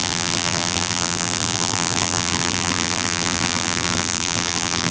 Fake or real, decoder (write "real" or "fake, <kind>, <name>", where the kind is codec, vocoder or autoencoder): fake, vocoder, BigVGAN v2